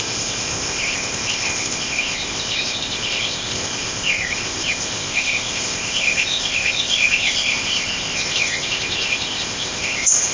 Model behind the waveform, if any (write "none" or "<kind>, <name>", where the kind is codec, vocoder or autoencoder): codec, ZipCodec